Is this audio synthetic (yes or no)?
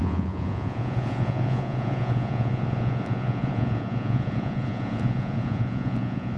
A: yes